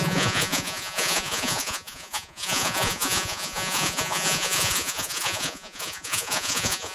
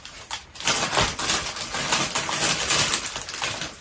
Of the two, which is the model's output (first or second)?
first